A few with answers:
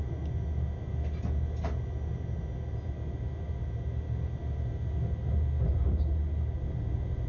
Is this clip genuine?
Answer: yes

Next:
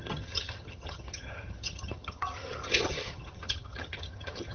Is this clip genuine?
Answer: no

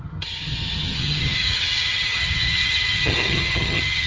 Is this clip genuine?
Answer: no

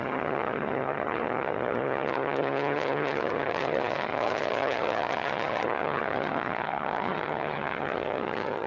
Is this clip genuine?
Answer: no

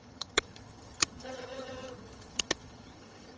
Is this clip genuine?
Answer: no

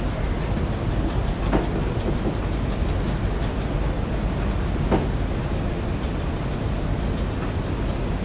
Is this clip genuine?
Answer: yes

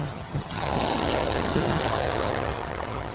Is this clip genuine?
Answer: no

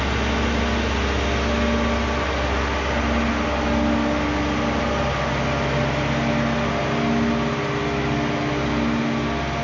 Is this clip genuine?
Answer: yes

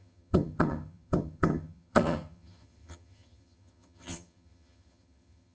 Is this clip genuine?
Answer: no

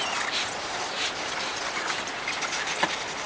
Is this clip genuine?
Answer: yes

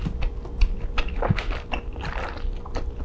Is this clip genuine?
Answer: yes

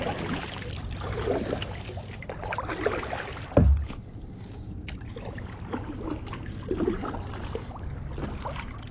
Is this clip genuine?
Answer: yes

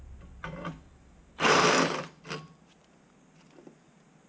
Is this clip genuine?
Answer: yes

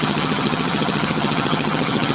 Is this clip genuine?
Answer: no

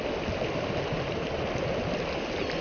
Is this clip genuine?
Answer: yes